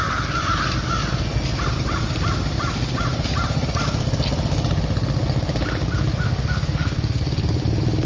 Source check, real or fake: real